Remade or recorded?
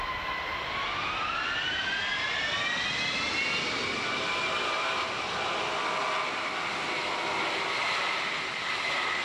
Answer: recorded